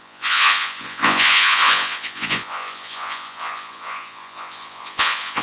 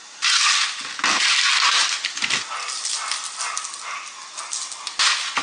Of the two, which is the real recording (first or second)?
second